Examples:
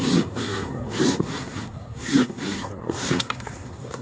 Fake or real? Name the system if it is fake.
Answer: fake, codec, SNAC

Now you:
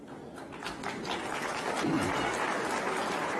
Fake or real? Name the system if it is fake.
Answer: real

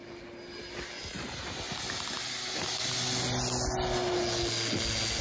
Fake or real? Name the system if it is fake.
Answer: real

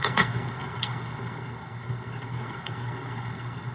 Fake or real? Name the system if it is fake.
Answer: fake, codec, SNAC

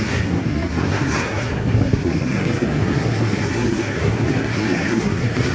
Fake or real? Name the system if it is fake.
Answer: fake, codec, SNAC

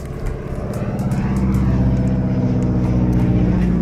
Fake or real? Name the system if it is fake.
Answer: real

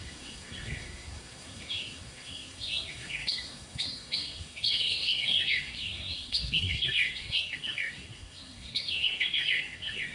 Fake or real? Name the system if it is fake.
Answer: fake, codec, SNAC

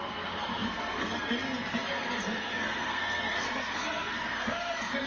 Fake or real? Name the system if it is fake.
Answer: fake, codec, SNAC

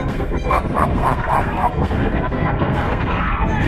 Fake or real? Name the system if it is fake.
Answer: fake, codec, SNAC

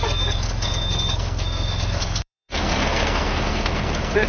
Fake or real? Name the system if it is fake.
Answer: fake, codec, SNAC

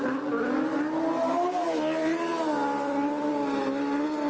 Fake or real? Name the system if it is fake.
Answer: real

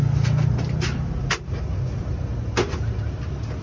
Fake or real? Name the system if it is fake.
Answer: real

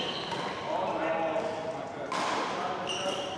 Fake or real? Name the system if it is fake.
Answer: real